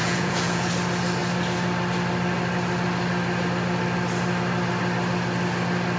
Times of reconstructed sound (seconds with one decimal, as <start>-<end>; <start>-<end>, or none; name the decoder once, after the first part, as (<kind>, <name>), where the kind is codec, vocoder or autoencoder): 0.0-0.7 (vocoder, Vocos)

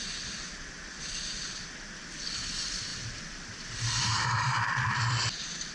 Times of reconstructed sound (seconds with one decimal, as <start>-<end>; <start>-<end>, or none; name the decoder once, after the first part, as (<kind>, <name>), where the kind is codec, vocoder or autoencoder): 2.9-5.7 (vocoder, BigVGAN v2)

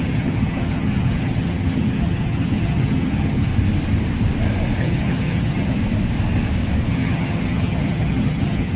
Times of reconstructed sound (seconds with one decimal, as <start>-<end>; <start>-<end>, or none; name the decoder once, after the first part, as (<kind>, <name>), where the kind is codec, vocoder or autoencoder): 0.0-3.5 (vocoder, HiFi-GAN); 4.8-5.8; 6.9-8.8